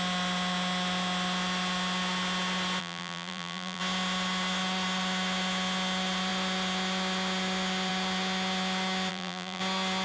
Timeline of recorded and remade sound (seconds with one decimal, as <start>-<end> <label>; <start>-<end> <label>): 0.0-2.8 recorded; 2.8-3.8 remade; 3.8-9.1 recorded; 9.1-9.6 remade; 9.6-10.0 recorded